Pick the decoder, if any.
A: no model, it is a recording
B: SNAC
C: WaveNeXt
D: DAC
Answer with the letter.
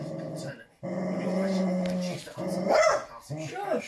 A